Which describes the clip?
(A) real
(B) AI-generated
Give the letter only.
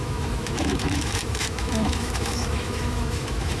B